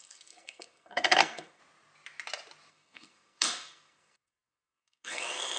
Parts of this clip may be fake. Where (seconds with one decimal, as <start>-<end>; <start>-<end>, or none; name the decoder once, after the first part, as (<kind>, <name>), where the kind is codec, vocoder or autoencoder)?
0.0-1.6 (codec, SNAC); 2.7-5.6